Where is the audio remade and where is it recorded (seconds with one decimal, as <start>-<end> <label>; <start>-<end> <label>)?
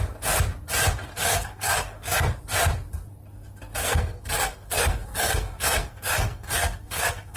0.0-1.1 recorded; 1.1-2.4 remade; 2.4-3.8 recorded; 3.8-7.4 remade